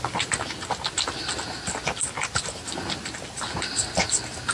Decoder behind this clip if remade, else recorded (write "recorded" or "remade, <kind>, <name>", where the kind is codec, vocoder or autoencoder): recorded